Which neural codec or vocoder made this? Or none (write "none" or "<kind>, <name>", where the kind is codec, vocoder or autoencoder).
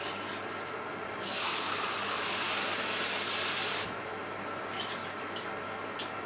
none